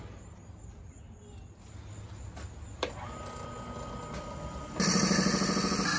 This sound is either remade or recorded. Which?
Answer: recorded